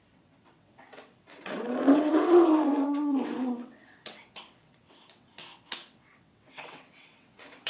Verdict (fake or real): fake